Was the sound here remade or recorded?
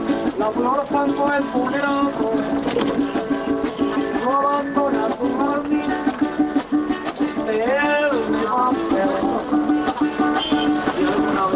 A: recorded